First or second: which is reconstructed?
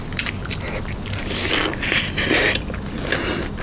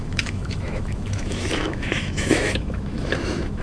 second